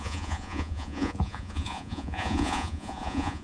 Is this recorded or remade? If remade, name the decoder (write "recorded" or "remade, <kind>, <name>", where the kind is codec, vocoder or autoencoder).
remade, vocoder, Vocos